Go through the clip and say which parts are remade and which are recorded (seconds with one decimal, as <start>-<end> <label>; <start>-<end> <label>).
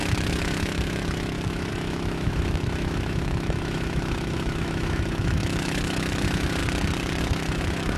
0.0-6.6 remade; 6.6-7.2 recorded; 7.2-8.0 remade